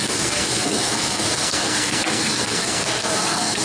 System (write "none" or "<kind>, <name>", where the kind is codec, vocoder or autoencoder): codec, SNAC